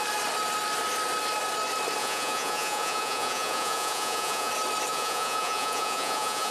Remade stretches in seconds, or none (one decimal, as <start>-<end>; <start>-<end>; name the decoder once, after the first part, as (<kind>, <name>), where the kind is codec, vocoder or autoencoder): 2.0-4.5 (vocoder, Vocos); 4.9-6.5